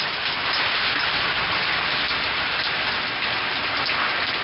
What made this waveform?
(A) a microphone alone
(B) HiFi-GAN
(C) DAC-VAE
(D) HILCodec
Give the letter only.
A